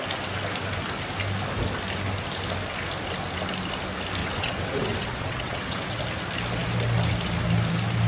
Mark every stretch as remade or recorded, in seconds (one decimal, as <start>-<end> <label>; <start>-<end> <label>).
0.0-4.2 recorded; 4.2-6.0 remade; 6.0-8.1 recorded